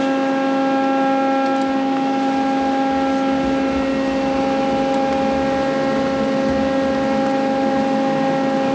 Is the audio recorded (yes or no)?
yes